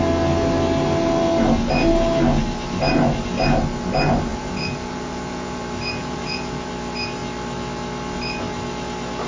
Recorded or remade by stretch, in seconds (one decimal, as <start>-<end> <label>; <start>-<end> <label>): 0.0-4.3 recorded; 4.3-5.6 remade; 5.6-6.0 recorded; 6.0-6.7 remade; 6.7-9.3 recorded